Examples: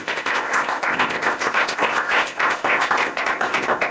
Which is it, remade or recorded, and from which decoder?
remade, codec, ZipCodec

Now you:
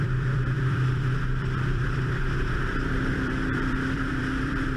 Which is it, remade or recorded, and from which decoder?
remade, vocoder, BigVGAN v2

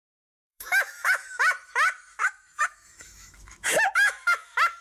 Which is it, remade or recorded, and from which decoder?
remade, autoencoder, DAC-VAE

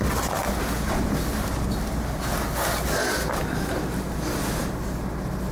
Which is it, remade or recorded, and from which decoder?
recorded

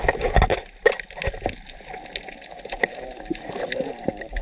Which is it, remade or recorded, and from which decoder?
recorded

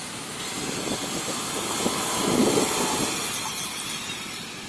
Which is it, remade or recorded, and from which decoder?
recorded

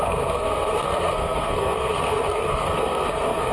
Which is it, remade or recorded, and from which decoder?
remade, codec, SNAC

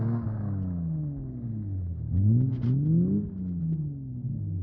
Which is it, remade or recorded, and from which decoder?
recorded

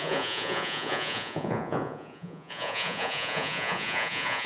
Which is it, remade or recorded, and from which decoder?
remade, vocoder, Vocos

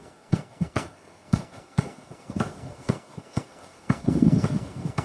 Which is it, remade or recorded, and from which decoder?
remade, codec, SNAC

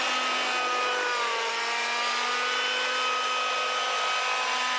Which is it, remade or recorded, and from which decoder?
recorded